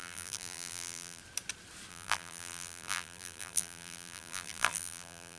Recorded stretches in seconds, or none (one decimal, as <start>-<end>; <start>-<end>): 1.2-1.9